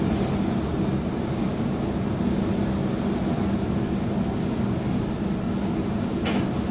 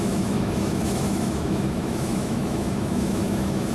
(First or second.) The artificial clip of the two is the second